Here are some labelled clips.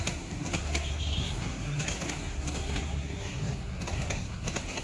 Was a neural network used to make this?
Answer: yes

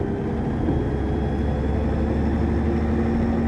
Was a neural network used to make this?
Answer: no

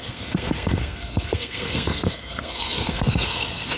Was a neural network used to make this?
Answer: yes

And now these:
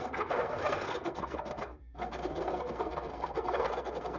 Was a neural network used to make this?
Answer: yes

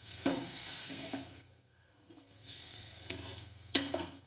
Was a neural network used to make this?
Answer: yes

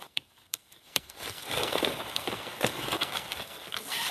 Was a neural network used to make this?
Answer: yes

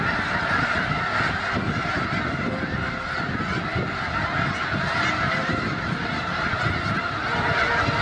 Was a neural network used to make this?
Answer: no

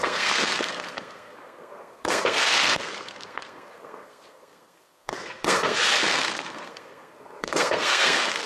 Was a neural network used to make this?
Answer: yes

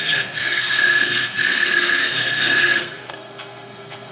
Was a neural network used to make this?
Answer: yes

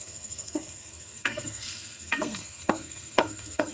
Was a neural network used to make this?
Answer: yes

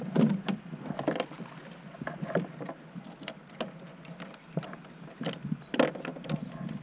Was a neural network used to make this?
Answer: no